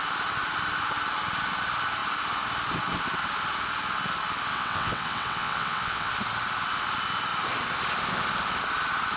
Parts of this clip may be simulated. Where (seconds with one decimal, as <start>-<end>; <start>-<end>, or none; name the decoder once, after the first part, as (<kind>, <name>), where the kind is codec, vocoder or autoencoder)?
4.5-6.1 (vocoder, WaveNeXt)